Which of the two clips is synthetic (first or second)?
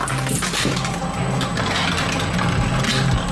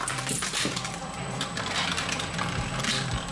second